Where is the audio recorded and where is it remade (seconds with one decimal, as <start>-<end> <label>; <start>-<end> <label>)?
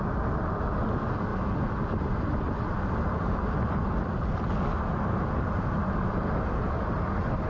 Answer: 0.0-7.5 recorded